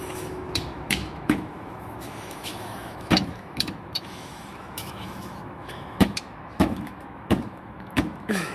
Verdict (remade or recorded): remade